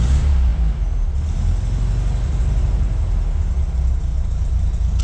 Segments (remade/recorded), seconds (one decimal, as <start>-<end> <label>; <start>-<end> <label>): 0.0-4.1 recorded; 4.1-5.0 remade